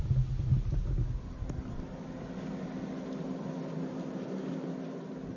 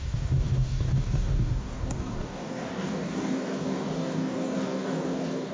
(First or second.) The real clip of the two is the first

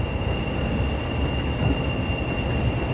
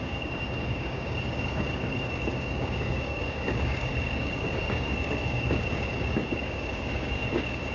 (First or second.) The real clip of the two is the first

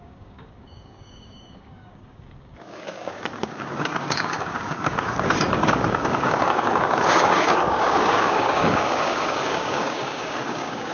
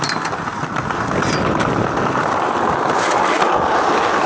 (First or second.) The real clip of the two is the second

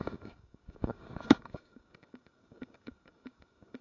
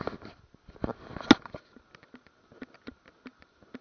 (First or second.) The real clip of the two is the second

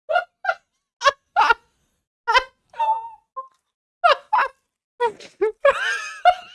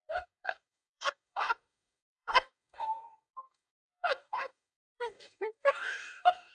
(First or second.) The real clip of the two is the first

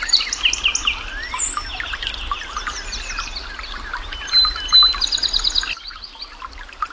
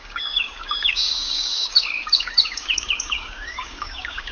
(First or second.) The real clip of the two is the first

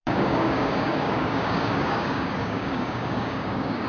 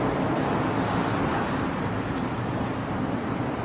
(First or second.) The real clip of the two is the second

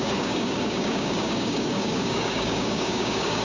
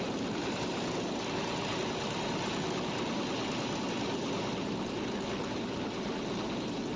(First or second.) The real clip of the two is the second